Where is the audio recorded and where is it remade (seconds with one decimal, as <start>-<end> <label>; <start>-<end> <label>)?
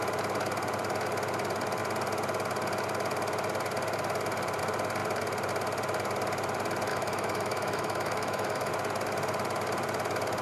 0.0-6.9 recorded; 6.9-8.7 remade; 8.7-10.4 recorded